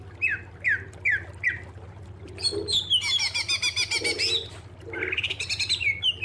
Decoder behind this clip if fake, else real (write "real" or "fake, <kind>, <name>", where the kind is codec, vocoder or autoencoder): real